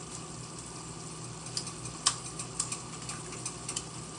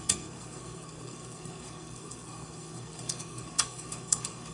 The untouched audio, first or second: first